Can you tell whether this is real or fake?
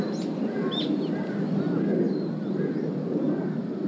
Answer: real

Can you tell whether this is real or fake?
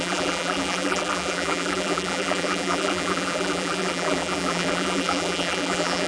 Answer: fake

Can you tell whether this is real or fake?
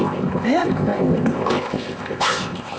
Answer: fake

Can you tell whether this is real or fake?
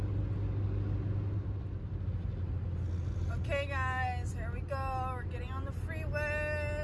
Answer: real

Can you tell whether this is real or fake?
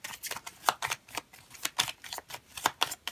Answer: real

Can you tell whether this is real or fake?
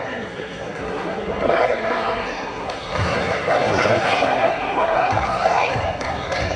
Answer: fake